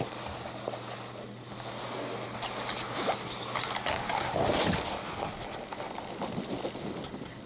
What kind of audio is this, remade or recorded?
recorded